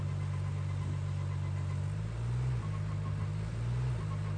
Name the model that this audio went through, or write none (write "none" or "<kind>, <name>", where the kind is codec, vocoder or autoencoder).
none